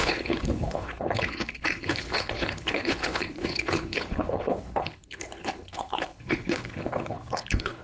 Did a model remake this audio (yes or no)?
yes